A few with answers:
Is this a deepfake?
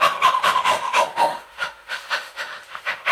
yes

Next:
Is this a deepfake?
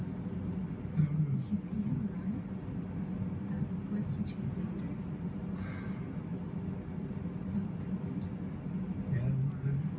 no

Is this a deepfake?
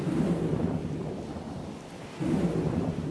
no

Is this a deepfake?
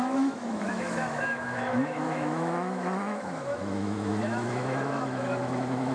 yes